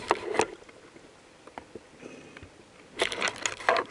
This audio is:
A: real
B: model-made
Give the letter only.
A